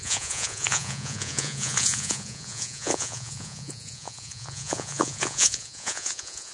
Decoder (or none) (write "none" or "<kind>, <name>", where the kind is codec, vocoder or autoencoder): vocoder, Vocos